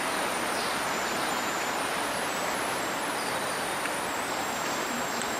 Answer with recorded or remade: remade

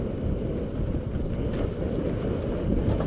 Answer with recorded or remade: recorded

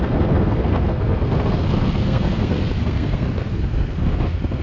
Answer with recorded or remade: remade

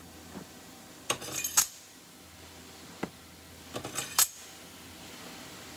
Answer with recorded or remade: recorded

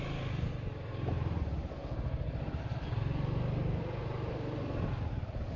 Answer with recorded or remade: recorded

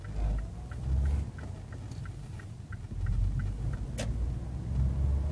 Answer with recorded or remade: recorded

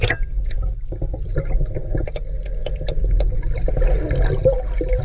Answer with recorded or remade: recorded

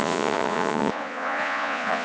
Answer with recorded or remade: remade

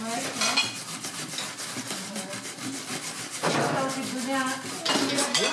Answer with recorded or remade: recorded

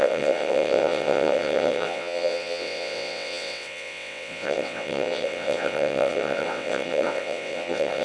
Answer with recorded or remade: remade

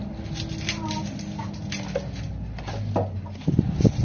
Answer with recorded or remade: recorded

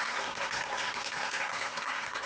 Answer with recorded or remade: remade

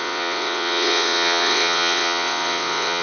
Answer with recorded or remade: remade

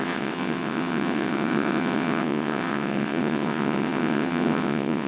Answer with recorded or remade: remade